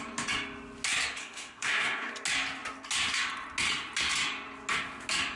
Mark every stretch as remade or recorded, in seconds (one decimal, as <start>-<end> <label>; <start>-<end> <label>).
0.0-1.2 recorded; 1.2-2.1 remade; 2.1-5.4 recorded